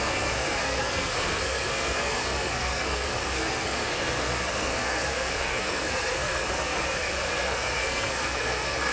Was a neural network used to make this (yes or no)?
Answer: yes